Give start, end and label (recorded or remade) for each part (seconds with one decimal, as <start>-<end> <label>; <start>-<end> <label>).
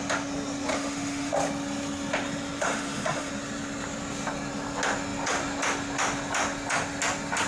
0.0-0.7 recorded; 0.7-1.3 remade; 1.3-2.6 recorded; 2.6-3.3 remade; 3.3-7.5 recorded